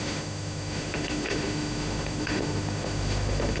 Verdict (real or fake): fake